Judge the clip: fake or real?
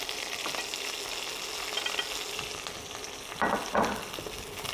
real